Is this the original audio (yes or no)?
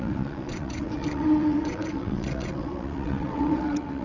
no